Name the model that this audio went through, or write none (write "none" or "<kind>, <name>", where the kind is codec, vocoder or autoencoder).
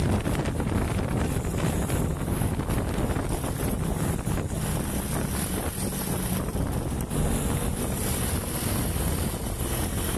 none